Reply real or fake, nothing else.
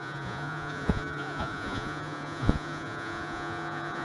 fake